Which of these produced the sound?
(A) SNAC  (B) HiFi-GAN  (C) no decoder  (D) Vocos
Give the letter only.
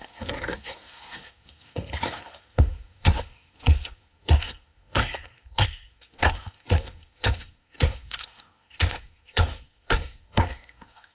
A